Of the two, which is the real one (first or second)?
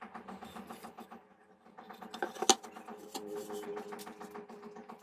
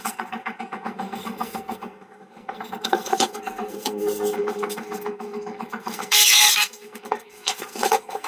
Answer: first